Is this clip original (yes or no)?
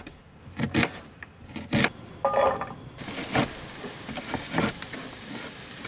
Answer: yes